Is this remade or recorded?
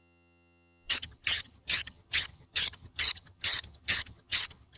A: remade